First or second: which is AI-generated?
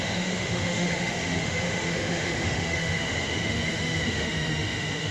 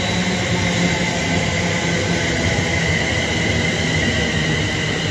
first